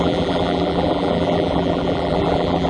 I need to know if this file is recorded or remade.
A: remade